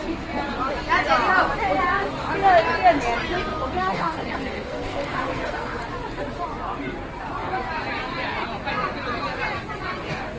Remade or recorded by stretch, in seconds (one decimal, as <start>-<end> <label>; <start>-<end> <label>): 0.0-3.5 recorded; 3.5-5.8 remade; 5.8-10.4 recorded